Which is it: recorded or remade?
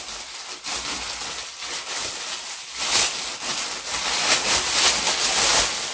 recorded